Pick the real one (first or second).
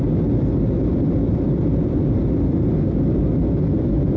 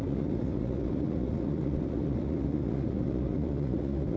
first